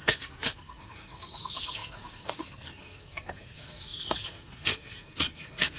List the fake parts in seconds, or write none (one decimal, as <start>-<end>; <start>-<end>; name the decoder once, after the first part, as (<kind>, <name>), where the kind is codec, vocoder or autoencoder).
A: 0.0-5.8 (codec, SNAC)